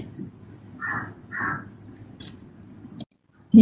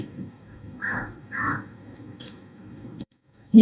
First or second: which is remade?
second